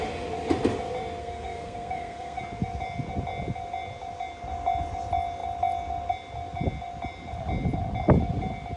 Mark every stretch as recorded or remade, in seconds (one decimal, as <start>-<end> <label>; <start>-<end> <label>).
0.0-1.2 recorded; 1.2-2.4 remade; 2.4-8.8 recorded